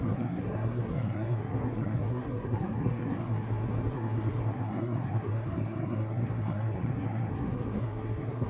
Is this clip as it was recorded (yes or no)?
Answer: no